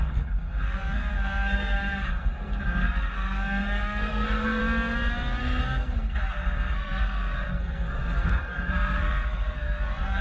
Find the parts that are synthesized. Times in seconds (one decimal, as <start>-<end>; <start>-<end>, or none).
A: 0.0-4.6; 5.4-10.2